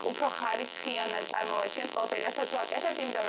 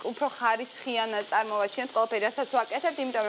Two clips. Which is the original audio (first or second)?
second